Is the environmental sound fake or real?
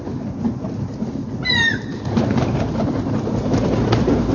real